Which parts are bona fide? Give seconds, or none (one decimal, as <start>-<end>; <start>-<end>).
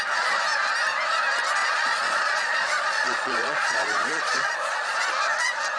0.0-1.6; 5.1-5.8